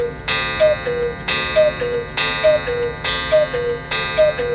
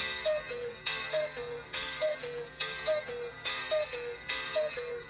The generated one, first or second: second